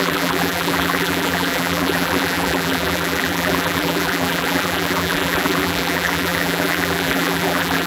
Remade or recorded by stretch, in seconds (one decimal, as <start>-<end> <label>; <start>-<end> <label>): 0.0-7.9 remade